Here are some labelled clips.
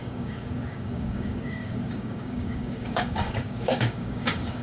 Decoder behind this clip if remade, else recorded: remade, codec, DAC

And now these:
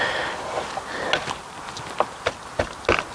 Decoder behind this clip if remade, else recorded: recorded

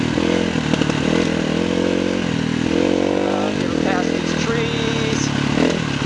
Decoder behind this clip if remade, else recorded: recorded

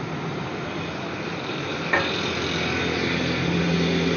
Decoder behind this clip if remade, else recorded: recorded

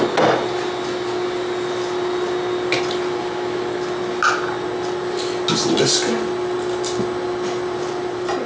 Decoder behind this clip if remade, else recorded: recorded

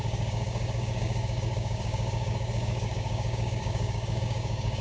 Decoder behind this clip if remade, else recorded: remade, codec, DAC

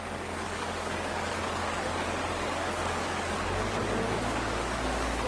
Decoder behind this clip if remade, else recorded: remade, codec, DAC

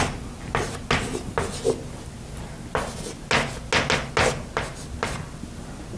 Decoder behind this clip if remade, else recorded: recorded